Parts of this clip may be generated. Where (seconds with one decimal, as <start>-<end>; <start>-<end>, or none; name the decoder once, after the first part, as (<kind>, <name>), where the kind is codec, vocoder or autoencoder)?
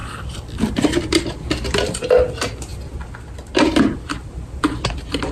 0.0-1.2 (vocoder, BigVGAN v2)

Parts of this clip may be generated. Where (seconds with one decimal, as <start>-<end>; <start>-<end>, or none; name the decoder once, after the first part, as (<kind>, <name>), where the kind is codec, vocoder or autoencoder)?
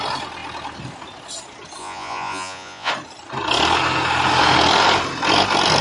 1.8-2.9 (vocoder, Vocos)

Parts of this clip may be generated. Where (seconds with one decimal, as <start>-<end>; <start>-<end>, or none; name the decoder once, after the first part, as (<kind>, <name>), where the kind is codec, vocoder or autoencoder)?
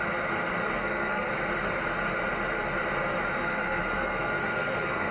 0.8-1.3 (codec, SNAC); 3.4-5.1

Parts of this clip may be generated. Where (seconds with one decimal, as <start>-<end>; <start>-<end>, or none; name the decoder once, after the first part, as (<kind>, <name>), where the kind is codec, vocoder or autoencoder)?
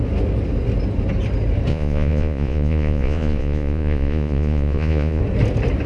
1.7-5.2 (vocoder, Vocos)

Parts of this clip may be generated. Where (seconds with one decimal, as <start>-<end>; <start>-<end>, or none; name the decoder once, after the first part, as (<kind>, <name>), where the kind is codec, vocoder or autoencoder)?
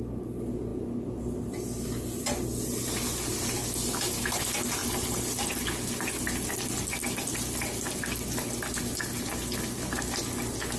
none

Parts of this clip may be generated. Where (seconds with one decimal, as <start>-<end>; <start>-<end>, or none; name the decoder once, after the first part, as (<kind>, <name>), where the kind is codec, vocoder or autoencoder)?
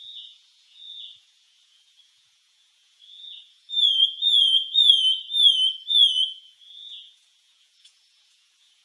0.0-5.0 (vocoder, Vocos); 5.9-8.8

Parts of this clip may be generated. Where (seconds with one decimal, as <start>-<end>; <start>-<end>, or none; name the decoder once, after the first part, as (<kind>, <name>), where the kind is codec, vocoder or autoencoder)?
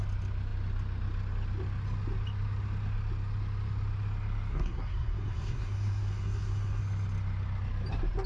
4.5-6.8 (codec, SNAC)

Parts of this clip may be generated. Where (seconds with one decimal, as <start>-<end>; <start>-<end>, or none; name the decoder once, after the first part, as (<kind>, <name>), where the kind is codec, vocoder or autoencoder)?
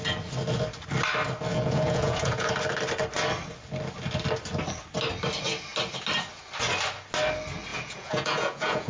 1.5-2.5 (vocoder, Vocos); 7.7-8.9